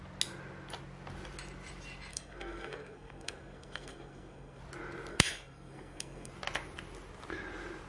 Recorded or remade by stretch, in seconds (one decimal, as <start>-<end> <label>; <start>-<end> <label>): 0.0-2.1 recorded; 2.1-4.6 remade; 4.6-5.1 recorded; 5.1-6.3 remade; 6.3-7.9 recorded